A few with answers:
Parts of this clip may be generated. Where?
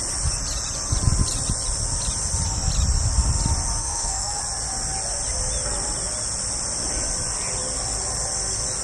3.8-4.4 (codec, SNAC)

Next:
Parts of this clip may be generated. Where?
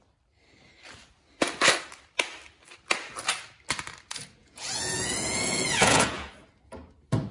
4.4-6.3 (vocoder, Vocos)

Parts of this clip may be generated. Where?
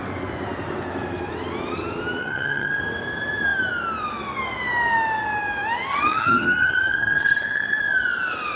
2.2-2.8 (vocoder, HiFi-GAN); 5.9-7.8